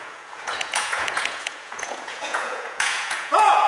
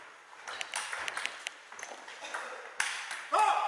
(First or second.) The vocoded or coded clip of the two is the first